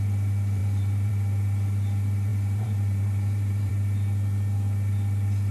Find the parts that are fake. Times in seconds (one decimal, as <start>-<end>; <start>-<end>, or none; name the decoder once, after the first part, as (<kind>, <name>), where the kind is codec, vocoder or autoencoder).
0.6-1.1 (vocoder, BigVGAN v2); 2.3-3.7